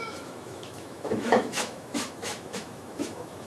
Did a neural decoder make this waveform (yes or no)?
yes